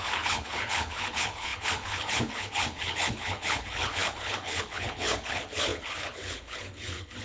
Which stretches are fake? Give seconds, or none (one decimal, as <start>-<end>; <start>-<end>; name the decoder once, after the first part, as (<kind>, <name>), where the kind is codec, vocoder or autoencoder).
0.0-7.2 (codec, HILCodec)